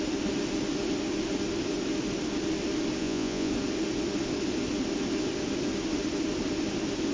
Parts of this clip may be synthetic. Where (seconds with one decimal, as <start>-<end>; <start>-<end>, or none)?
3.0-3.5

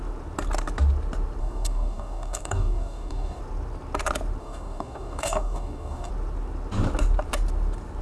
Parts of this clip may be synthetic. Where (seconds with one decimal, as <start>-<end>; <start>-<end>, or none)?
1.4-3.4; 4.4-6.1

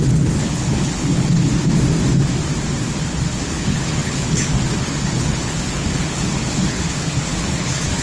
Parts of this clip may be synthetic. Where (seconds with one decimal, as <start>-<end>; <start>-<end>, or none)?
0.0-1.5; 3.3-8.0

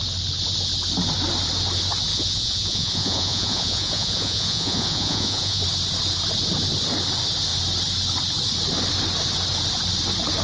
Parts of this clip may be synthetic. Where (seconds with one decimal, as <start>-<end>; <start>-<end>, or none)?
2.1-5.6

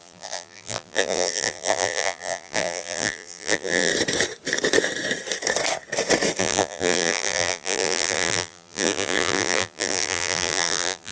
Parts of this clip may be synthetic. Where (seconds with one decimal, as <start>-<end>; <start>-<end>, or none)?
0.0-3.9; 6.4-11.1

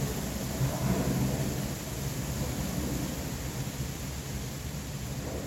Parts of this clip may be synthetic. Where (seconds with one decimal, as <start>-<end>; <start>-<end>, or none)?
none

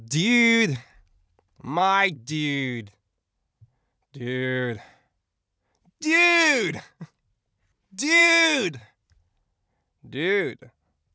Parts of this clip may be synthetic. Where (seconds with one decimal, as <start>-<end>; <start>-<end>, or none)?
1.1-1.8; 8.2-9.1